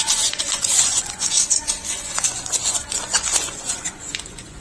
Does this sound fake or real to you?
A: fake